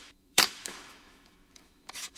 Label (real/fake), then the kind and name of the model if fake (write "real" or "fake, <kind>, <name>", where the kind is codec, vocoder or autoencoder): fake, autoencoder, DAC-VAE